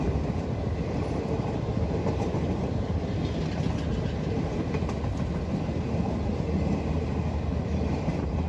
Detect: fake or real real